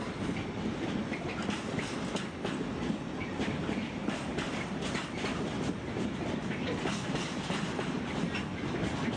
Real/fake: real